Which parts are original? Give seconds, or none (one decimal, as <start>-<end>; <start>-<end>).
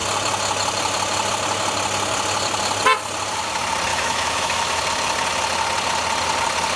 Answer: 0.0-3.9; 4.8-6.8